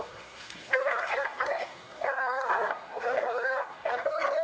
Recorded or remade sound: remade